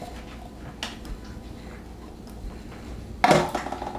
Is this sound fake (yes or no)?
no